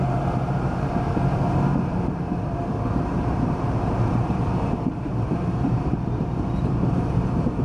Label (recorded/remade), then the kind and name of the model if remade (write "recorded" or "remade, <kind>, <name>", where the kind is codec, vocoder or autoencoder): remade, vocoder, BigVGAN v2